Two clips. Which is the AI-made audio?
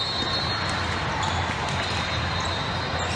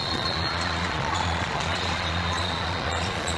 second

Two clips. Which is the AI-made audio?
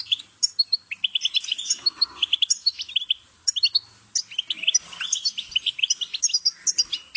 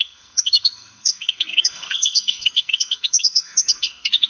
second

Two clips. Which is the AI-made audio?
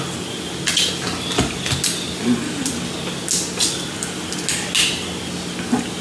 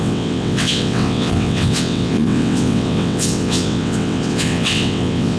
second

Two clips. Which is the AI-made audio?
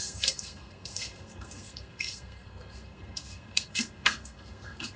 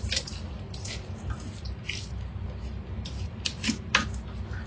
first